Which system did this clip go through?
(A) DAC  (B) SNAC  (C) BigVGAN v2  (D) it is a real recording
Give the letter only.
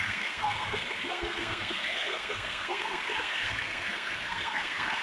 B